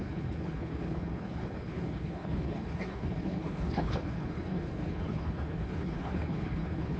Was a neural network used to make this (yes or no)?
yes